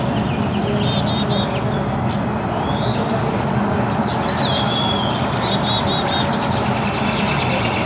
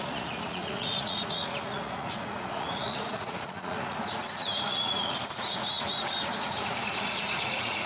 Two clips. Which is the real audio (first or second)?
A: first